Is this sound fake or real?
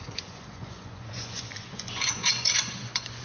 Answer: fake